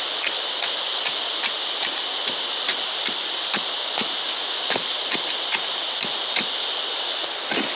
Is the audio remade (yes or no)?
no